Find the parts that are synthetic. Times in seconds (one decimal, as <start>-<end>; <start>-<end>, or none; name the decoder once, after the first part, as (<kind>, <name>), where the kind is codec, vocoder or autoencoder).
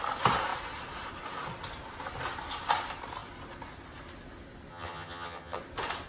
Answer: 4.7-5.6 (vocoder, HiFi-GAN)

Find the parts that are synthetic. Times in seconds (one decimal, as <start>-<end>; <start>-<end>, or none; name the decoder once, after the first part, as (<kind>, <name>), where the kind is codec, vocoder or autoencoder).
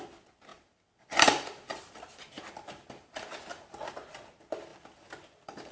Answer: 0.5-3.9 (vocoder, BigVGAN v2); 4.7-5.7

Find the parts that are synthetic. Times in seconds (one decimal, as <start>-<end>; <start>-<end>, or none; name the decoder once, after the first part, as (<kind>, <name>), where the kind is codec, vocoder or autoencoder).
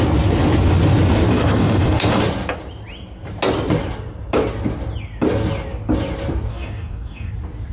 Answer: 1.3-2.2 (codec, DAC); 6.5-7.3